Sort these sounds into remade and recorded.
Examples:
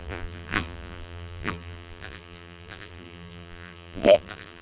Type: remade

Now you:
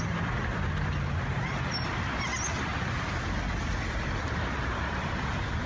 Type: remade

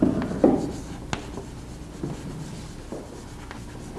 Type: recorded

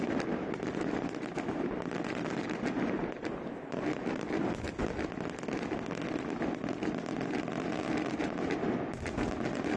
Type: recorded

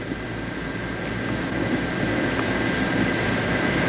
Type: recorded